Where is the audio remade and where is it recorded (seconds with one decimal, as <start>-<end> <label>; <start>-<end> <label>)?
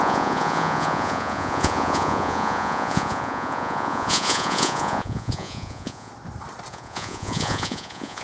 0.0-6.1 remade; 6.1-6.7 recorded; 6.7-8.2 remade